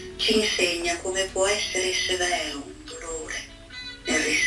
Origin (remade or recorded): recorded